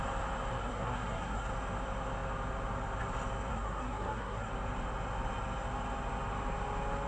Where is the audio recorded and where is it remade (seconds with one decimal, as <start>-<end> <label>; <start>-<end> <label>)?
0.0-0.6 recorded; 0.6-1.5 remade; 1.5-3.5 recorded; 3.5-4.5 remade; 4.5-7.1 recorded